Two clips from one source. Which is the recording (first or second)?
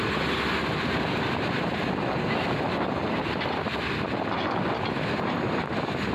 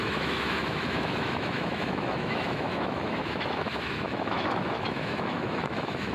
first